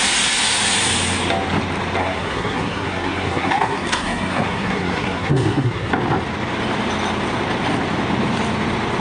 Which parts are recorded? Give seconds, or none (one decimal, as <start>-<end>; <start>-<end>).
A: 0.0-2.0; 5.9-9.0